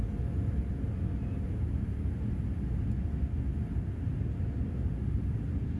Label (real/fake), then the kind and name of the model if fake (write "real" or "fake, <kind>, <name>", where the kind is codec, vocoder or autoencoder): real